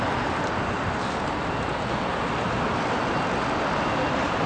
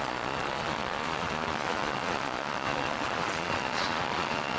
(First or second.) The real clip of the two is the first